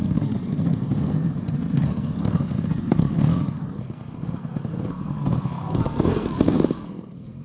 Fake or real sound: fake